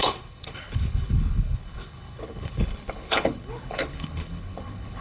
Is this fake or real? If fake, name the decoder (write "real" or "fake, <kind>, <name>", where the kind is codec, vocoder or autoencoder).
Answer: fake, codec, HILCodec